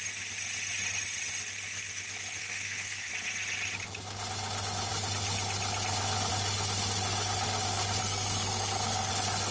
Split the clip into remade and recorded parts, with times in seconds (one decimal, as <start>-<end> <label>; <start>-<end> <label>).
0.0-2.4 recorded; 2.4-3.1 remade; 3.1-8.0 recorded; 8.0-9.1 remade; 9.1-9.5 recorded